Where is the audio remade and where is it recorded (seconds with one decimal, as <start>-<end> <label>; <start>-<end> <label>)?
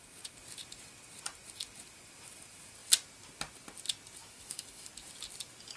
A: 0.0-4.2 recorded; 4.2-4.9 remade; 4.9-5.8 recorded